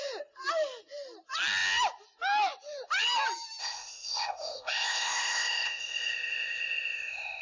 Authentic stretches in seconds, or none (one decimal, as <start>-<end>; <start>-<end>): 0.0-3.6